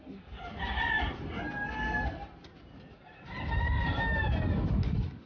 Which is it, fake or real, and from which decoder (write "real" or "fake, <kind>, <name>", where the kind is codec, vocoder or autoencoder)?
real